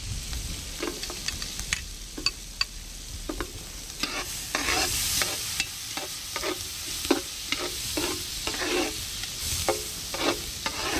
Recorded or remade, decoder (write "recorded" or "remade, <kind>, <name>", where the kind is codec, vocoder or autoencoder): recorded